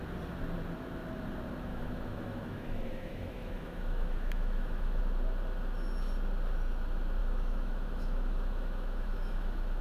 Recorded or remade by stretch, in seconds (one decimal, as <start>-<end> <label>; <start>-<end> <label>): 0.0-1.7 recorded; 1.7-5.0 remade; 5.0-7.2 recorded; 7.2-9.8 remade